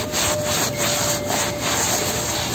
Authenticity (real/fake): real